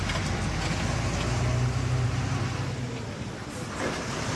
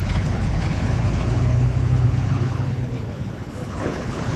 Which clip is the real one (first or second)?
first